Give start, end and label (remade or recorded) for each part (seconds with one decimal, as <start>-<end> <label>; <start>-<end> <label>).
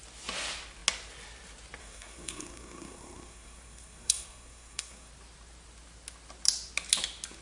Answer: 0.0-1.8 recorded; 1.8-5.1 remade; 5.1-7.4 recorded